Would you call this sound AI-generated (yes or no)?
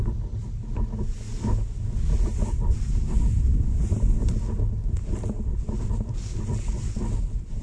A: no